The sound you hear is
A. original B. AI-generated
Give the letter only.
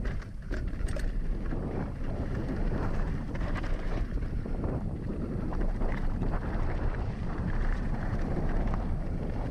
B